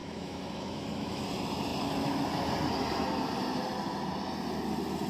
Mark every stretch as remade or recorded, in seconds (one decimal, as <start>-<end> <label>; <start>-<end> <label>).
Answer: 0.0-1.2 remade; 1.2-5.1 recorded